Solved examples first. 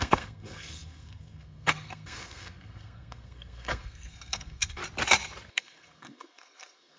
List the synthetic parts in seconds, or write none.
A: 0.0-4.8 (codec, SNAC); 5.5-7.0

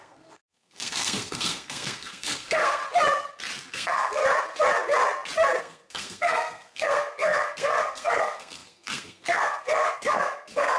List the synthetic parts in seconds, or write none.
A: 0.0-2.8 (codec, SNAC); 3.7-4.2; 5.6-10.8

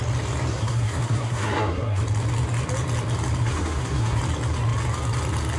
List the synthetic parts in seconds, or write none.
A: 0.5-2.0 (codec, SNAC); 3.4-4.2